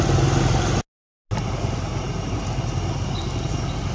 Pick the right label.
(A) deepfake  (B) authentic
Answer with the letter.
B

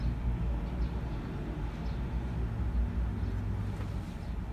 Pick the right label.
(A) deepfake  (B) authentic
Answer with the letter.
B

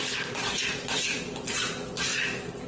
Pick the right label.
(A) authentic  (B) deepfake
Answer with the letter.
B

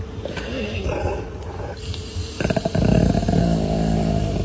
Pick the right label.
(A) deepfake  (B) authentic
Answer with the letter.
B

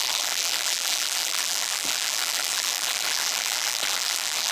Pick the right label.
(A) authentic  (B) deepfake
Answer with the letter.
B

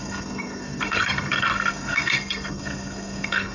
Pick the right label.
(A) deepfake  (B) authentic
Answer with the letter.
A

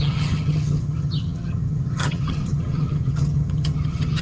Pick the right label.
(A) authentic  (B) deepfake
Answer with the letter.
B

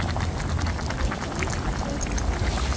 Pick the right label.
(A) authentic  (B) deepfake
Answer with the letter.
A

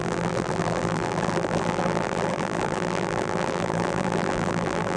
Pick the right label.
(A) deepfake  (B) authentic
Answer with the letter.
A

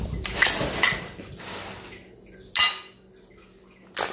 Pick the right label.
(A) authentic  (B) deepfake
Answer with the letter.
A